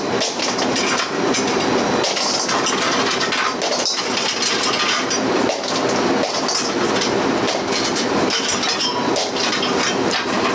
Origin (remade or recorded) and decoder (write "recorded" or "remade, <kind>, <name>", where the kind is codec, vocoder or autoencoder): recorded